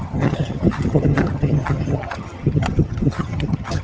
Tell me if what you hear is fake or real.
fake